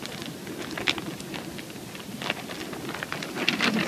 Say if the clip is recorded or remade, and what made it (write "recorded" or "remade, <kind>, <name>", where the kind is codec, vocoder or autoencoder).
recorded